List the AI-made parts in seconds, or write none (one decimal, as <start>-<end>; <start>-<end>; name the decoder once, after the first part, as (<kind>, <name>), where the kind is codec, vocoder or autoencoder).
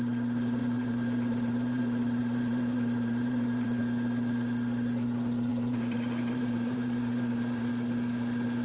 0.6-1.8 (vocoder, BigVGAN v2); 2.2-3.8; 5.5-7.7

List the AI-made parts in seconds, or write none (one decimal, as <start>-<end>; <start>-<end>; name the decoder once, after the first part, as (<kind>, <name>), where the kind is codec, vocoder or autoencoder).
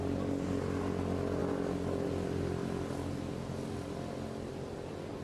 none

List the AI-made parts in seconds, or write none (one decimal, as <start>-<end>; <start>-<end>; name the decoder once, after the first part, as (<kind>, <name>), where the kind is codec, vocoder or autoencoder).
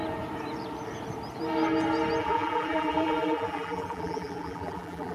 2.2-5.1 (vocoder, BigVGAN v2)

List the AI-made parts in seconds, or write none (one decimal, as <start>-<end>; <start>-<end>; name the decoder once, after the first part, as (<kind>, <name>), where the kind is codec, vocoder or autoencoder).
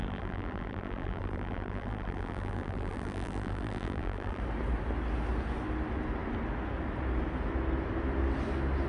0.0-4.4 (vocoder, BigVGAN v2)